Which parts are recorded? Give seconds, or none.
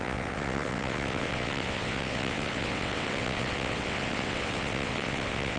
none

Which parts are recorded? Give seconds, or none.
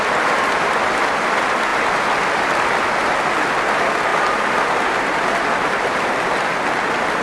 0.0-7.2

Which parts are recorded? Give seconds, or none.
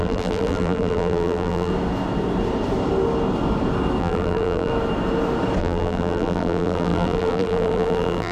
1.7-4.0; 4.7-5.6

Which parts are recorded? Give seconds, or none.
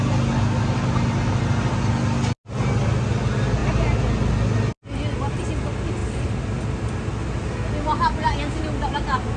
0.0-9.4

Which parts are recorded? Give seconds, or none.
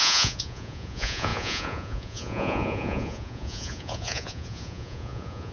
none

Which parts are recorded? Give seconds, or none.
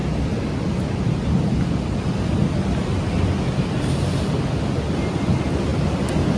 0.0-6.4